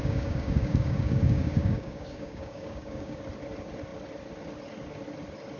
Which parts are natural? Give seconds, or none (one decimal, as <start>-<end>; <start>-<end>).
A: 3.2-5.6